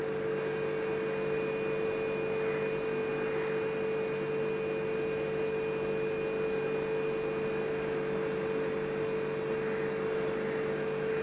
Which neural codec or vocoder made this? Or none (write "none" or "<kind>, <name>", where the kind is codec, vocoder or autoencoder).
none